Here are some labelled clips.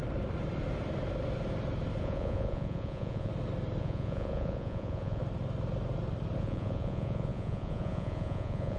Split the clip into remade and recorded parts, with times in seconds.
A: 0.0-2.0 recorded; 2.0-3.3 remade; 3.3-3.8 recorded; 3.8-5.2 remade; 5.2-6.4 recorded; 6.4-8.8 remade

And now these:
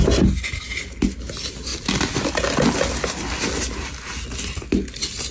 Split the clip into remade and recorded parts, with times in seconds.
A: 0.0-5.3 recorded

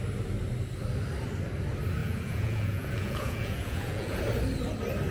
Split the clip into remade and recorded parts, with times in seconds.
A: 0.0-2.0 recorded; 2.0-4.2 remade; 4.2-5.1 recorded

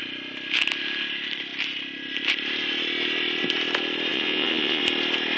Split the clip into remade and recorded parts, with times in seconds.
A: 0.0-4.1 recorded; 4.1-4.8 remade; 4.8-5.4 recorded

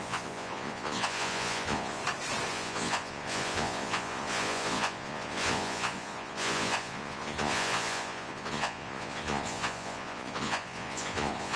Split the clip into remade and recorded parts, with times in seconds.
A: 0.0-2.0 remade; 2.0-2.5 recorded; 2.5-11.6 remade

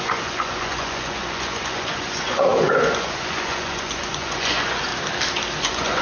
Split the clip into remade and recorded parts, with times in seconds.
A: 0.0-4.9 remade; 4.9-5.6 recorded; 5.6-6.0 remade